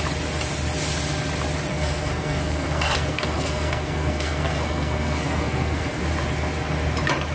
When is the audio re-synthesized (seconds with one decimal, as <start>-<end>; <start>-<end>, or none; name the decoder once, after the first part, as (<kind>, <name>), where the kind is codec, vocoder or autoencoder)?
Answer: 1.7-6.0 (codec, SNAC)